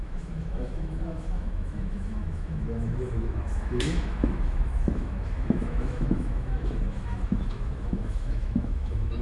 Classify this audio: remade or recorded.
remade